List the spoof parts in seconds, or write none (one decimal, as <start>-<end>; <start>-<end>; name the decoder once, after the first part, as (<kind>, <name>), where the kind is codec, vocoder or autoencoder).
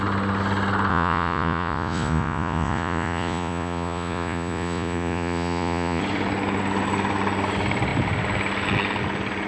0.9-6.0 (vocoder, Vocos)